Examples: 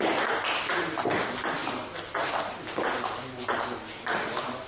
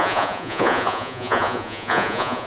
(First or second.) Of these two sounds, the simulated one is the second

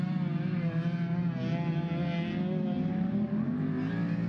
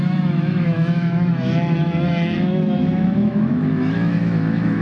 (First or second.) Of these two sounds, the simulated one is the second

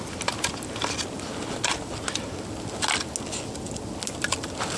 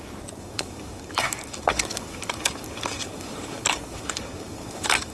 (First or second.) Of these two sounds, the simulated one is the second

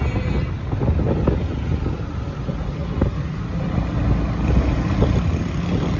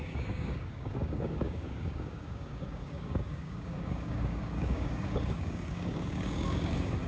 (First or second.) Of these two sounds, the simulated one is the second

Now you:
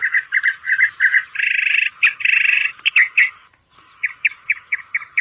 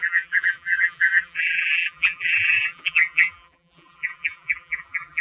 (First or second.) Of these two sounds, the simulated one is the second